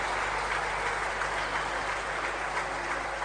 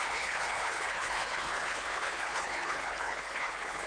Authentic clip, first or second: first